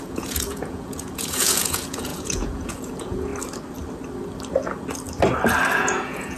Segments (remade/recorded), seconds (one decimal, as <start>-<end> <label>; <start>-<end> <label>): 0.0-3.3 remade; 3.3-5.7 recorded; 5.7-6.4 remade